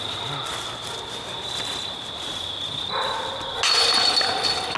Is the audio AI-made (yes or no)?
no